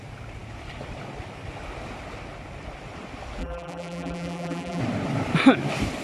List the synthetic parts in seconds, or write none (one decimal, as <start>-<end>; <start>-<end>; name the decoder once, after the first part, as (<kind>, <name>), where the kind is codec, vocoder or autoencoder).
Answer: 3.4-4.8 (vocoder, BigVGAN v2)